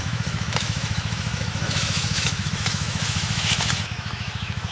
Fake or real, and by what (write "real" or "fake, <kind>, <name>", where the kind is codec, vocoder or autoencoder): fake, autoencoder, DAC-VAE